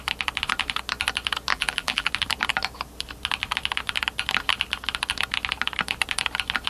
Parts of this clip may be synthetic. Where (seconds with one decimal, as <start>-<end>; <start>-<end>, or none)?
1.5-2.1